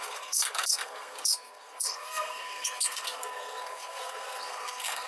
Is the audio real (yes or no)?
no